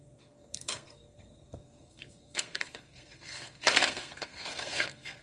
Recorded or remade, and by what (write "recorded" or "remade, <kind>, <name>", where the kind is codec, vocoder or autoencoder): remade, codec, SNAC